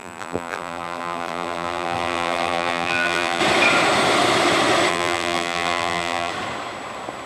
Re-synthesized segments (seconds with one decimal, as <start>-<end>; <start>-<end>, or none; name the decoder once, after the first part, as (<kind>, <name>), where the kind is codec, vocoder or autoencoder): 0.0-3.4 (vocoder, BigVGAN v2); 4.9-6.3